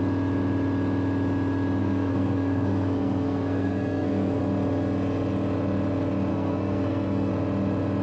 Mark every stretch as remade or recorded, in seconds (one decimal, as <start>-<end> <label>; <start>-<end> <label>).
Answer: 0.0-1.8 recorded; 1.8-4.4 remade; 4.4-6.3 recorded; 6.3-7.3 remade; 7.3-8.0 recorded